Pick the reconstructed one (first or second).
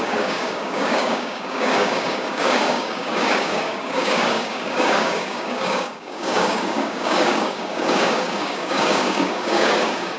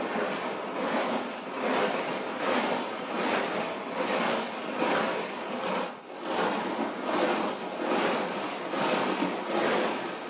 first